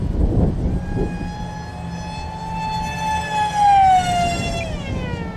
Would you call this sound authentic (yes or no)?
yes